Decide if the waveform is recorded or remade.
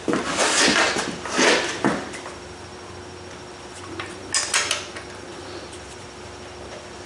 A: recorded